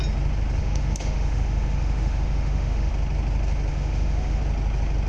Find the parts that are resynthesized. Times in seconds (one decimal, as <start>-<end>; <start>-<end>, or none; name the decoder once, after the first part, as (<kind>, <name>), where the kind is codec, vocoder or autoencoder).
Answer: 0.6-2.9 (autoencoder, DAC-VAE); 3.7-4.4